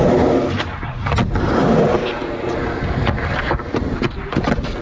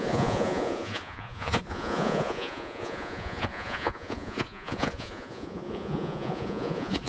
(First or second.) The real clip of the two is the first